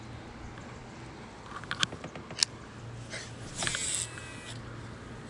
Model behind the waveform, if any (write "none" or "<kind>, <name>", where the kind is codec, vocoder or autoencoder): none